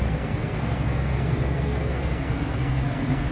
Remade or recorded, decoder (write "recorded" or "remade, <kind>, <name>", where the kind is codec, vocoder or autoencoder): remade, codec, SNAC